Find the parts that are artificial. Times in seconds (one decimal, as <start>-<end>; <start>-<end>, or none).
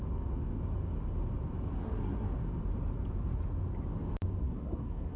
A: 1.8-2.3; 4.4-5.2